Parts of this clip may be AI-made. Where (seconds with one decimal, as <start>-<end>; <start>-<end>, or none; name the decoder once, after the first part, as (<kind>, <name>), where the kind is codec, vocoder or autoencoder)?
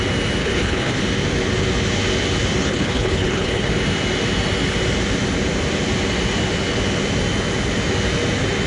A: 0.4-1.0 (codec, HILCodec); 2.6-3.7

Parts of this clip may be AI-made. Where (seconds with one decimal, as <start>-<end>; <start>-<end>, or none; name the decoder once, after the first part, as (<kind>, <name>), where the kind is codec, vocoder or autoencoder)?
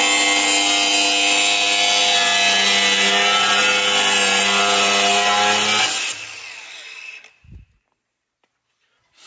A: none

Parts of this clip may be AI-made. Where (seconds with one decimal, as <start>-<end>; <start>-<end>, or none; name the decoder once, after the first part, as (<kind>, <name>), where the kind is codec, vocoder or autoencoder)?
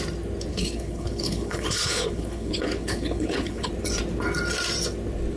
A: 0.5-3.7 (codec, HILCodec)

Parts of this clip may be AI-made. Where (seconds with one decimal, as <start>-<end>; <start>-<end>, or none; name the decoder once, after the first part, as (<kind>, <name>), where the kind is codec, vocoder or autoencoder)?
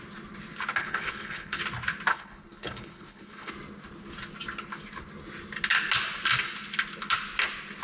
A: 0.8-1.6 (codec, HILCodec); 2.1-3.5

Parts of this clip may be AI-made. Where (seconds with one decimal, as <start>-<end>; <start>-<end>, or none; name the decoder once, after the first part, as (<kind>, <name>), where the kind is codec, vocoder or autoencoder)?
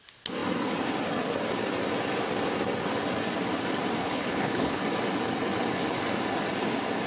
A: 4.0-4.8 (codec, HILCodec)